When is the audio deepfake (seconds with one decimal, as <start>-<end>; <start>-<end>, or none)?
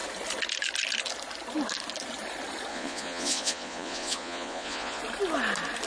2.7-5.0